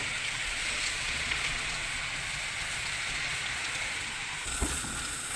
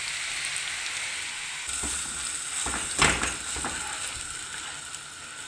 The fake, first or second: first